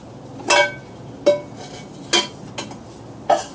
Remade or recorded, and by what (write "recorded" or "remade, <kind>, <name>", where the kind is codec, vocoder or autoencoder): recorded